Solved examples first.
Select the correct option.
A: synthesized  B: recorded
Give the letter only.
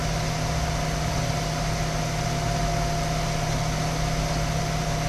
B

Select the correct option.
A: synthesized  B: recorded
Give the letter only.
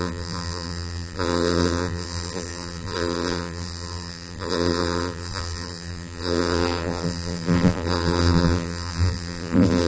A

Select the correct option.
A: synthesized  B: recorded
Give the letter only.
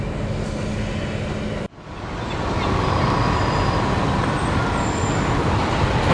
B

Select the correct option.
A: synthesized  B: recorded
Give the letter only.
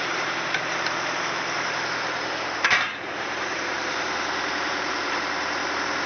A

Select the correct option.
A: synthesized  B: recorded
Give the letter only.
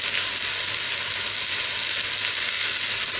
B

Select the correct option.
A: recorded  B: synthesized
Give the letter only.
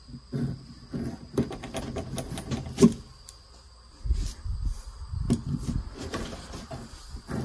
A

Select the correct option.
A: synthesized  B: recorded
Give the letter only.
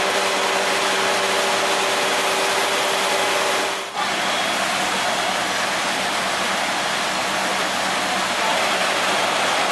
B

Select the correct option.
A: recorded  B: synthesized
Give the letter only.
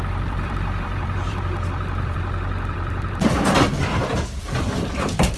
B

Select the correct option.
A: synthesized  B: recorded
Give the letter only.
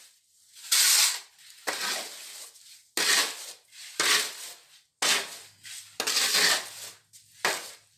B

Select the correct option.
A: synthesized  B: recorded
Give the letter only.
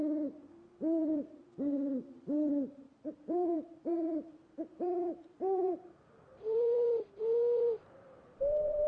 A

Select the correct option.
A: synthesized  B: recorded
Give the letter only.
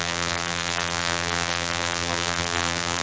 A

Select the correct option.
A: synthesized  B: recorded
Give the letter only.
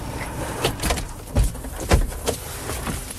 A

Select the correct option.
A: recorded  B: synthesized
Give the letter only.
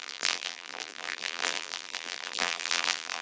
B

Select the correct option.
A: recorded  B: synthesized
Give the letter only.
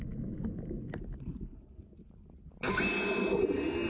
A